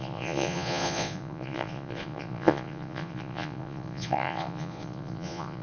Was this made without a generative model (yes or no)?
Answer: no